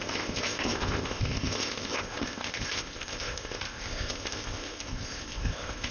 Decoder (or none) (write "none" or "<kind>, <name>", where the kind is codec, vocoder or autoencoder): codec, ZipCodec